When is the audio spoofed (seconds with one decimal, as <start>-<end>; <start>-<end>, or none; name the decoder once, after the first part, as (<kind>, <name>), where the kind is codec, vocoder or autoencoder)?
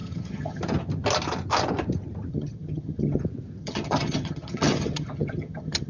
0.0-0.6 (vocoder, HiFi-GAN); 2.3-3.2; 3.6-5.9